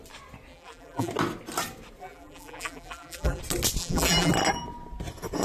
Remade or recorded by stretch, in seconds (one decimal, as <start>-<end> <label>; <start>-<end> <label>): 0.0-0.5 recorded; 0.5-1.1 remade; 1.1-2.0 recorded; 2.0-3.4 remade; 3.4-3.8 recorded; 3.8-4.3 remade; 4.3-5.4 recorded